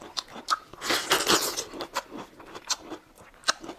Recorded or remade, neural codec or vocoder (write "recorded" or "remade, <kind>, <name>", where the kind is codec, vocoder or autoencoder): recorded